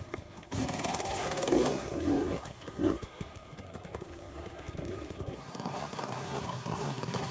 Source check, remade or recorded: remade